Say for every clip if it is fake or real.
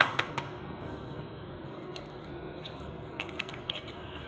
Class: fake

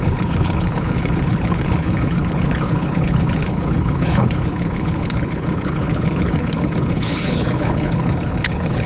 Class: fake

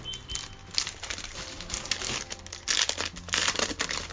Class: real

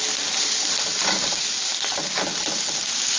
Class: real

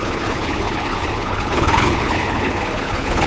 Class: fake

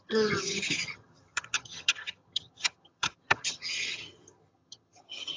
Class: fake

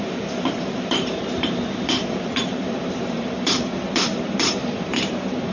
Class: fake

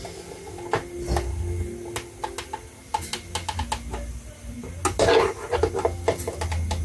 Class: real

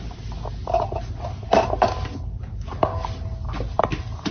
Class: real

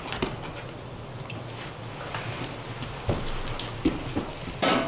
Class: real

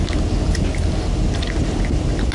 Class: real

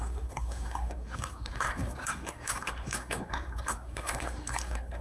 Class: fake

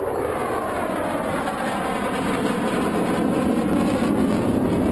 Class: real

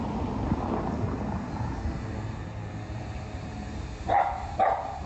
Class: real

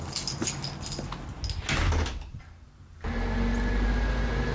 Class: real